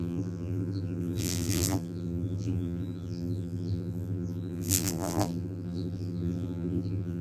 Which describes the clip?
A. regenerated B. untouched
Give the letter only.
A